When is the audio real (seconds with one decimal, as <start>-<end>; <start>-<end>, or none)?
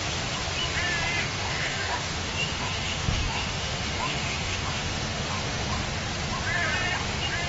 0.0-1.2; 5.7-7.5